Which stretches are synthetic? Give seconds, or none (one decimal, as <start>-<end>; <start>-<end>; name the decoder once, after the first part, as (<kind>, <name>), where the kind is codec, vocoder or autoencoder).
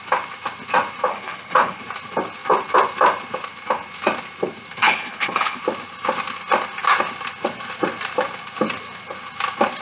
1.1-1.8 (codec, HILCodec); 4.8-5.6